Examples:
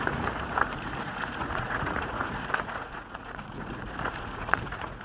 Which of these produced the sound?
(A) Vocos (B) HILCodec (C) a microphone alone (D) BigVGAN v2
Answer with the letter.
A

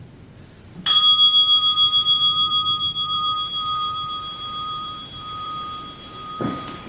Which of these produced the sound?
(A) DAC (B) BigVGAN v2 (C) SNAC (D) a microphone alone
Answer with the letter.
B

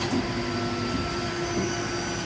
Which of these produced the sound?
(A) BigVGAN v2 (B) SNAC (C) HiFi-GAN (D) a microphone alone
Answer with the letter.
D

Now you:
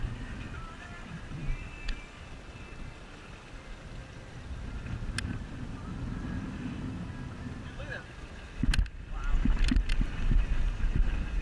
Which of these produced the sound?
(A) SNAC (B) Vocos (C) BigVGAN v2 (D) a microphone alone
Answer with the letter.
D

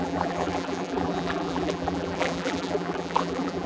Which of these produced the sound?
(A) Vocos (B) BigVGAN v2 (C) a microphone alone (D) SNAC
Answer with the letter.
B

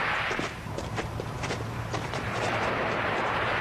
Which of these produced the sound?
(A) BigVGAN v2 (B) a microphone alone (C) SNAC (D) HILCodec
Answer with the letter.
A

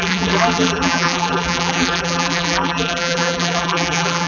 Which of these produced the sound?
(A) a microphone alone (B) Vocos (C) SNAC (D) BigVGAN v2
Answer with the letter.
D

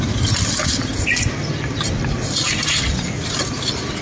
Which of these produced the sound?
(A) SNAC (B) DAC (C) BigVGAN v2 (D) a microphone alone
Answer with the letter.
D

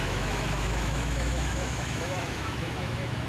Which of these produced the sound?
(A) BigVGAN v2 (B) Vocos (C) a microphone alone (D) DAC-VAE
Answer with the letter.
D